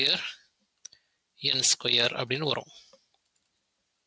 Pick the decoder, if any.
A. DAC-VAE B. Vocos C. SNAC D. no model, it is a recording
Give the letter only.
D